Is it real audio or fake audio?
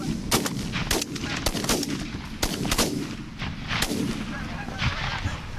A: real